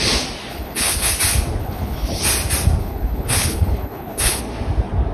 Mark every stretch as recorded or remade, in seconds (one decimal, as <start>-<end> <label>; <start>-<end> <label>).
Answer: 0.0-0.5 recorded; 0.5-1.1 remade; 1.1-1.6 recorded; 1.6-2.2 remade; 2.2-2.8 recorded; 2.8-4.4 remade; 4.4-5.1 recorded